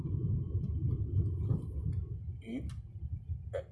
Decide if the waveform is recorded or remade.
recorded